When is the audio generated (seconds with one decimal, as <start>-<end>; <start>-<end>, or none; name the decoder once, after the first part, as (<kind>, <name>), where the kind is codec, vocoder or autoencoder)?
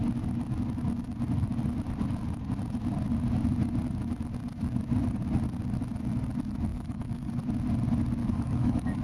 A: 6.7-7.3 (codec, DAC); 8.2-9.0